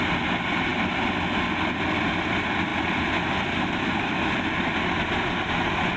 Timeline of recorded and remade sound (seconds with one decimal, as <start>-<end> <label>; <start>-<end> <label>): 0.0-6.0 recorded